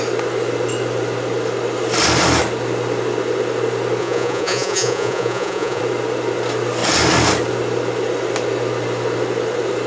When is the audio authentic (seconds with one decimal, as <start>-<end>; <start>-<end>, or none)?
0.0-4.0; 5.8-9.9